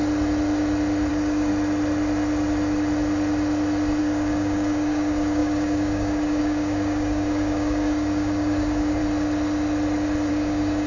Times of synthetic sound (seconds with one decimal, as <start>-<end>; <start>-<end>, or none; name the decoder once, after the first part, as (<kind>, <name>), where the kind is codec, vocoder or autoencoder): 1.1-1.5 (codec, DAC); 4.0-9.0; 10.3-10.9